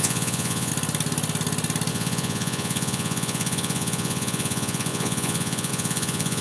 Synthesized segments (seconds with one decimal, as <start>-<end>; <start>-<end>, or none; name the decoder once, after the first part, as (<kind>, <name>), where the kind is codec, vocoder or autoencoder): 0.0-0.7 (vocoder, Vocos); 1.9-6.4